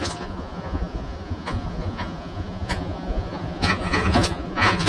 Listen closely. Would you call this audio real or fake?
fake